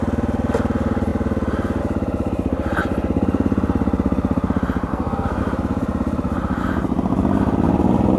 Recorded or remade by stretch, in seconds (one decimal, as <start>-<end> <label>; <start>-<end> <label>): 0.0-4.9 recorded; 4.9-5.4 remade; 5.4-8.2 recorded